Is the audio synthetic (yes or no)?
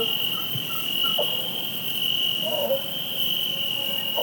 yes